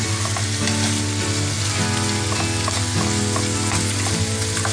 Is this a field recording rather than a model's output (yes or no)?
yes